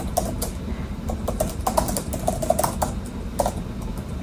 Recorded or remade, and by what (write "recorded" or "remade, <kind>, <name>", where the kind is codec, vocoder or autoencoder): recorded